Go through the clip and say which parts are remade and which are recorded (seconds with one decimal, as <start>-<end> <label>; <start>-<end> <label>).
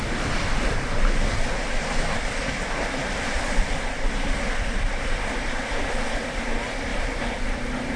0.0-6.9 remade; 6.9-8.0 recorded